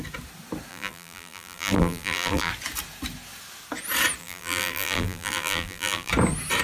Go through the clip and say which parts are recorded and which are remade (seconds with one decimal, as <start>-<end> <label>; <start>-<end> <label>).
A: 0.0-0.7 recorded; 0.7-2.5 remade; 2.5-4.2 recorded; 4.2-6.1 remade; 6.1-6.6 recorded